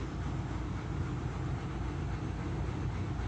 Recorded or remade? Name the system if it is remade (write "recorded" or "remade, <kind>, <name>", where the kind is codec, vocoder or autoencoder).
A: recorded